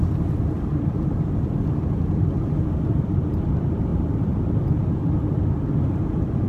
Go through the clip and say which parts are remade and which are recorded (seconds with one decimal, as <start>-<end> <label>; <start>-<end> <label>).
0.0-6.5 recorded